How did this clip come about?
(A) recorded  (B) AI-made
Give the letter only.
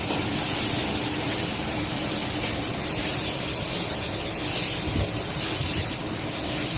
A